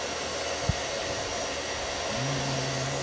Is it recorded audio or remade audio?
recorded